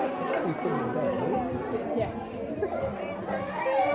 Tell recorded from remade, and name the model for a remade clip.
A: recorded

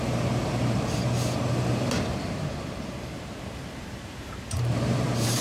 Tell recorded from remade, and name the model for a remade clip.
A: remade, vocoder, BigVGAN v2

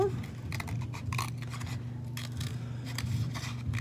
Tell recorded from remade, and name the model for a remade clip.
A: recorded